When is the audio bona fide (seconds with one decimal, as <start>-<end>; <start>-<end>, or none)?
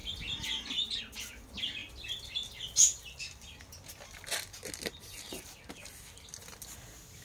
0.0-7.2